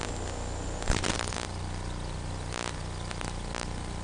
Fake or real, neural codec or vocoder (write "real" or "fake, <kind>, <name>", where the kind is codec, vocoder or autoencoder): real